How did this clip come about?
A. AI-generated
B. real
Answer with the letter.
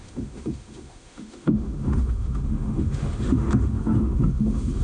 A